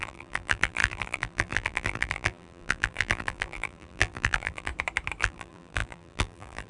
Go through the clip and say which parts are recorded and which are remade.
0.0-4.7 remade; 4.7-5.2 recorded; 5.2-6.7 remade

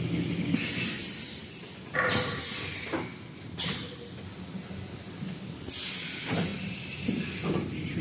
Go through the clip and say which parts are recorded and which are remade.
0.0-3.8 recorded; 3.8-5.3 remade; 5.3-6.5 recorded; 6.5-7.2 remade; 7.2-8.0 recorded

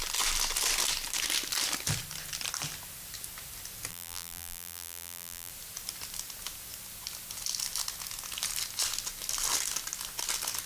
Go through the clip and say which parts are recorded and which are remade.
0.0-3.9 recorded; 3.9-5.5 remade; 5.5-10.7 recorded

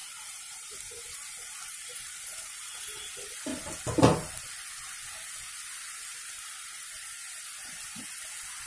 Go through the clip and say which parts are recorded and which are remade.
0.0-3.5 remade; 3.5-8.7 recorded

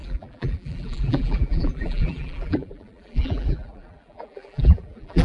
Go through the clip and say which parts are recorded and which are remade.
0.0-5.2 remade

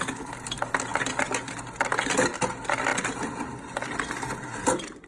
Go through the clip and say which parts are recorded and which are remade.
0.0-5.1 recorded

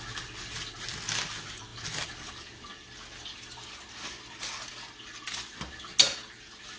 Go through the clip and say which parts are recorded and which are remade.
0.0-6.8 recorded

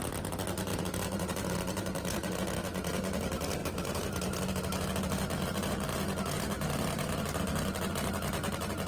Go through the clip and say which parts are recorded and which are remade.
0.0-0.7 recorded; 0.7-2.3 remade; 2.3-3.6 recorded; 3.6-4.4 remade; 4.4-8.9 recorded